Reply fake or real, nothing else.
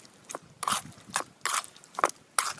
real